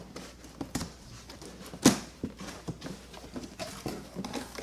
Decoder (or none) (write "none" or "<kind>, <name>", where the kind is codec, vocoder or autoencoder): none